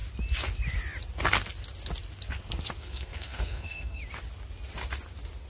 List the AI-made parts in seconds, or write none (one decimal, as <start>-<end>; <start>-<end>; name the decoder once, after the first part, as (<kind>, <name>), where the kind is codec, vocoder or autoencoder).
2.8-4.0 (codec, SNAC)